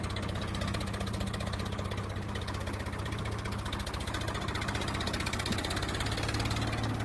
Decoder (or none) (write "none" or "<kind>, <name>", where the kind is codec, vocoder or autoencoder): none